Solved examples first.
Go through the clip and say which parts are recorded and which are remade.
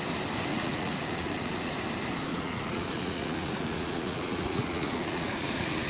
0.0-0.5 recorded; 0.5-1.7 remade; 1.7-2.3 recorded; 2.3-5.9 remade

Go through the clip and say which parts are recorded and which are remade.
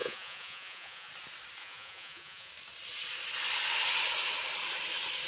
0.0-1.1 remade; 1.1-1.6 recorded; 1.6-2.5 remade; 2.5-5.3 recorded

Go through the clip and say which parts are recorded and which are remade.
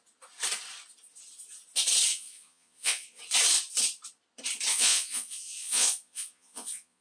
0.0-2.1 recorded; 2.1-3.2 remade; 3.2-4.7 recorded; 4.7-7.0 remade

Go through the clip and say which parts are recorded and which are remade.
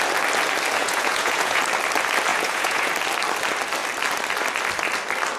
0.0-0.8 recorded; 0.8-1.6 remade; 1.6-2.3 recorded; 2.3-2.9 remade; 2.9-5.4 recorded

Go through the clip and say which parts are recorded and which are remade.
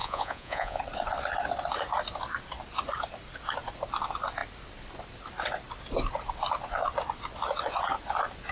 0.0-0.8 remade; 0.8-8.5 recorded